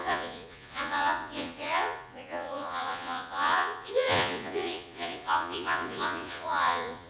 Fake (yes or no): yes